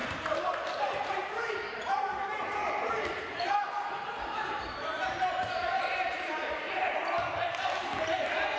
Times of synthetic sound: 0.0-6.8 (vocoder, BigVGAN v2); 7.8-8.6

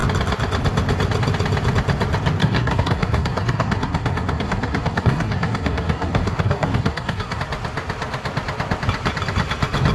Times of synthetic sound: 2.4-7.4 (codec, SNAC)

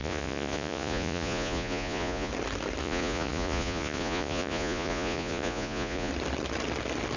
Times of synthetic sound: 0.0-2.3 (vocoder, Vocos); 2.8-6.1

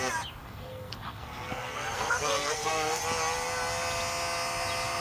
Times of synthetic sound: 0.4-3.0 (codec, SNAC)

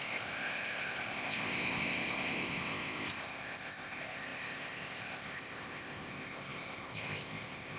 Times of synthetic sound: 0.0-7.8 (codec, ZipCodec)

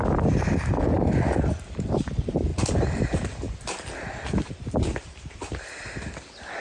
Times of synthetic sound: none

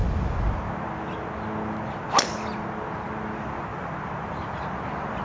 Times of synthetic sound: none

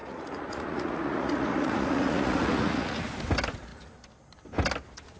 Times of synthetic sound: 0.0-3.1 (vocoder, Vocos)